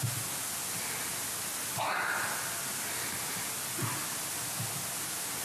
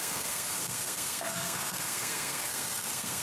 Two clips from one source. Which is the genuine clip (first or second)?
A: first